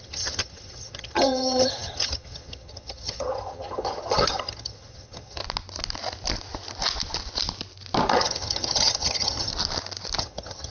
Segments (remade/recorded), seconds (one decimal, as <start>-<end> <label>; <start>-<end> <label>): 0.0-5.4 remade; 5.4-8.1 recorded; 8.1-9.5 remade; 9.5-10.2 recorded; 10.2-10.7 remade